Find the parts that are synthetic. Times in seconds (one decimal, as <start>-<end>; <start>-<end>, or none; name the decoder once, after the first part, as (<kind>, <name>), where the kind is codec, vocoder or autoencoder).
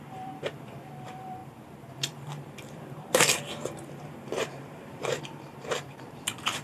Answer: 0.0-6.6 (vocoder, BigVGAN v2)